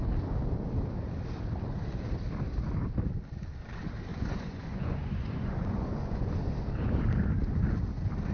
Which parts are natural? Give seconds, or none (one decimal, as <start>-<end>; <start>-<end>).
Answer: 0.0-4.1; 6.4-8.3